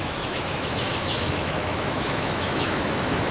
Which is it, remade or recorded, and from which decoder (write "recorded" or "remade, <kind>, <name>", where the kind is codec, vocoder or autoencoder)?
remade, autoencoder, DAC-VAE